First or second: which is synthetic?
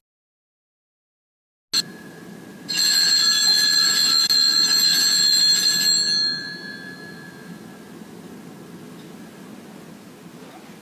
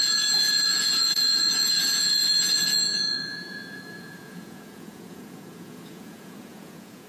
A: second